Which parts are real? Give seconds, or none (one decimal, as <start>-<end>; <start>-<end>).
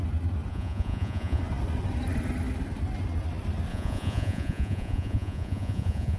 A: 0.0-0.5; 1.4-3.7